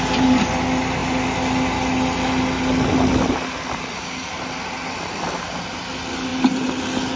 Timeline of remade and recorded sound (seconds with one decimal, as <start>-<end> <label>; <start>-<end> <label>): 0.0-7.2 recorded